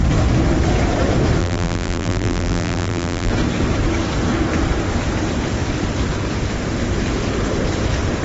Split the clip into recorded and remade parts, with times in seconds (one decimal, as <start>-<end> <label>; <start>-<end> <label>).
0.0-1.4 recorded; 1.4-3.3 remade; 3.3-8.2 recorded